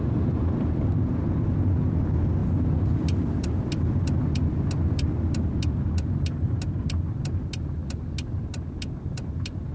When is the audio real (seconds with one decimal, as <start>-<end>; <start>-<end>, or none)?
0.0-9.7